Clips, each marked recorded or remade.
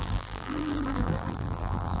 remade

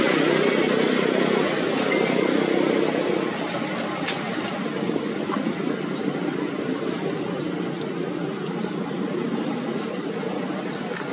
recorded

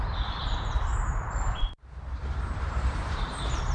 remade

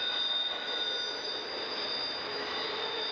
recorded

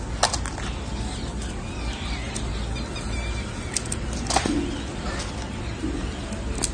recorded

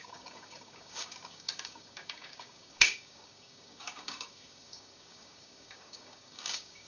remade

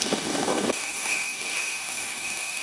remade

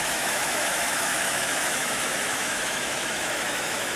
remade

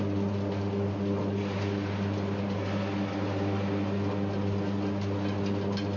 recorded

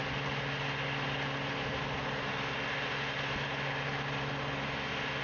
recorded